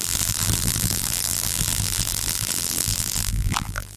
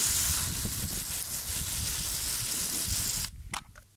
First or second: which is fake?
first